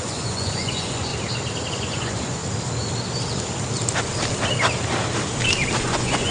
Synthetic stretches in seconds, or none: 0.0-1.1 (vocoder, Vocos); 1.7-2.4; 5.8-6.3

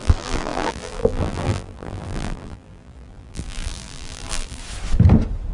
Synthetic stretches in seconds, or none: 0.0-4.6 (vocoder, BigVGAN v2)